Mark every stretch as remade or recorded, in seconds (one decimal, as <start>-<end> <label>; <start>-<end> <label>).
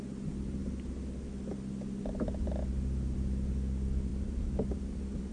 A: 0.0-5.3 recorded